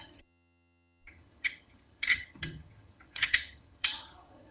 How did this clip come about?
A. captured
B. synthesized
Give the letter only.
B